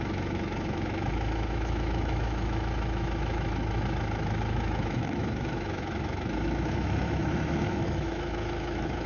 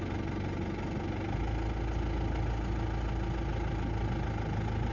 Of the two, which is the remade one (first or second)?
first